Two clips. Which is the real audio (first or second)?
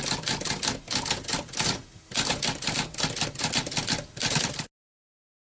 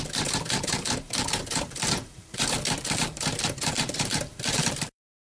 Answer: first